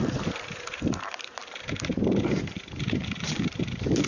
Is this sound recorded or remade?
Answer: remade